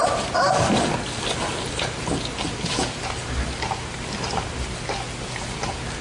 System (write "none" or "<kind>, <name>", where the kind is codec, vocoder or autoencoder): none